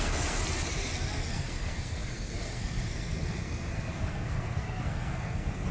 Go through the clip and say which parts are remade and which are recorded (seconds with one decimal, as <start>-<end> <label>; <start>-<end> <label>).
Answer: 0.0-0.4 remade; 0.4-1.3 recorded; 1.3-5.7 remade